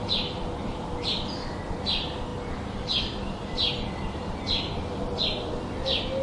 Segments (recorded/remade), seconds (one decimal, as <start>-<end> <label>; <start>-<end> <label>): 0.0-6.2 recorded